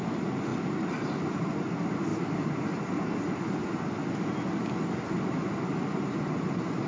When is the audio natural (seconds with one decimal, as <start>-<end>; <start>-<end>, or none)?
0.0-6.9

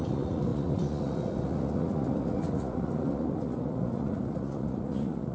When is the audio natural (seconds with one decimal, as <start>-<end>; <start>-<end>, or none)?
none

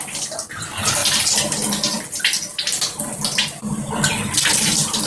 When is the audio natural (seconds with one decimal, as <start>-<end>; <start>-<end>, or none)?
0.0-5.1

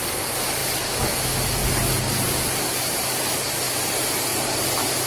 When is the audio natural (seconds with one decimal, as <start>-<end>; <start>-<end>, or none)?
0.0-5.1

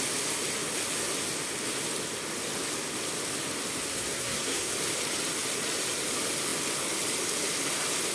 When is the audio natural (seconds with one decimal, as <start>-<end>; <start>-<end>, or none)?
0.0-3.9; 4.7-8.1

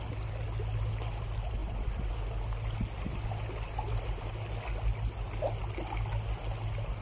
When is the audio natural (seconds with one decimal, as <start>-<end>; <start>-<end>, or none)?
0.0-1.6; 2.1-7.0